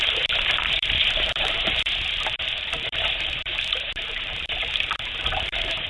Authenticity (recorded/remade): remade